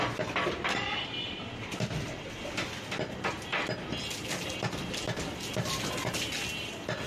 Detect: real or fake real